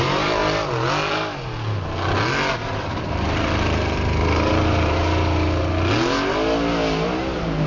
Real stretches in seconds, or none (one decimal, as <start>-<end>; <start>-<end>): 0.4-2.5; 5.0-7.2